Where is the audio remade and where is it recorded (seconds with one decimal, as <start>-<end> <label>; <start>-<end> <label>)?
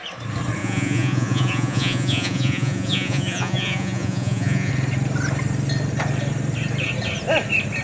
0.0-0.6 recorded; 0.6-4.7 remade; 4.7-7.8 recorded